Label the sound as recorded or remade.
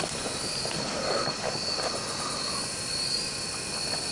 recorded